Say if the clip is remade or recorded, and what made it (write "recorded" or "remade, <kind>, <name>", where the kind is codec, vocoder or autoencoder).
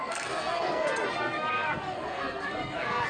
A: remade, codec, SNAC